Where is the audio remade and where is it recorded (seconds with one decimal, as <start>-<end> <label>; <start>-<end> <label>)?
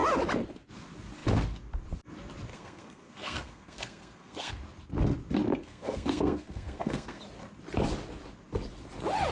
0.0-2.5 recorded; 2.5-4.5 remade; 4.5-5.6 recorded; 5.6-7.2 remade; 7.2-9.3 recorded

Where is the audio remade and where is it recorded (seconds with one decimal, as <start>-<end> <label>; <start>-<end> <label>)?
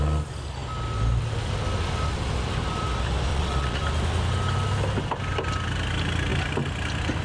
0.0-3.3 recorded; 3.3-3.8 remade; 3.8-7.2 recorded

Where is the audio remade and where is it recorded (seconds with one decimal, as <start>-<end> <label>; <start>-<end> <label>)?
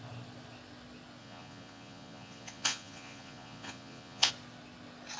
0.0-1.2 recorded; 1.2-4.3 remade; 4.3-5.2 recorded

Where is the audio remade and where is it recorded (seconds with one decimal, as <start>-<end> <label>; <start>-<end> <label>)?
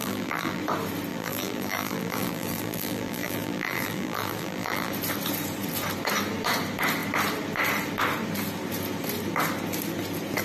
0.0-0.6 remade; 0.6-1.1 recorded; 1.1-4.9 remade; 4.9-10.4 recorded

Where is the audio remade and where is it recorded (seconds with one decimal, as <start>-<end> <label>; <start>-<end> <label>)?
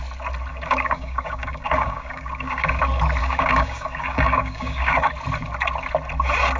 0.0-0.5 recorded; 0.5-2.8 remade; 2.8-3.2 recorded; 3.2-5.1 remade; 5.1-6.6 recorded